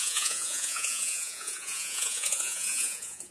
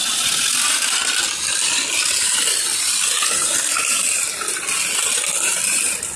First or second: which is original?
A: second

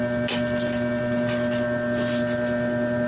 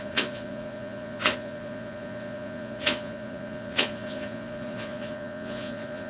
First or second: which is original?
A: first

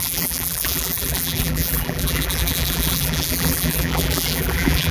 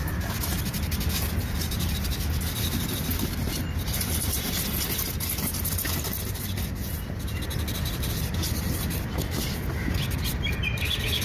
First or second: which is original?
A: second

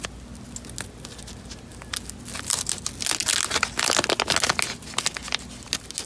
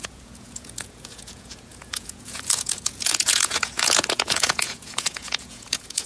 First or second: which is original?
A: first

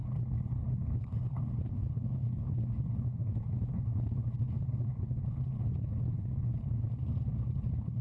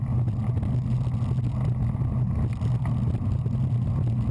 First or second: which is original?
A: second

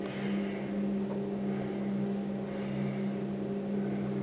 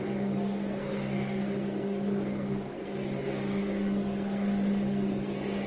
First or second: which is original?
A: first